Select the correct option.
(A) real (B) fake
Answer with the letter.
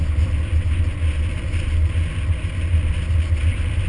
A